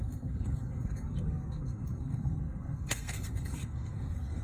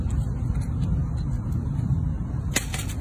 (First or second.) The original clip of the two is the second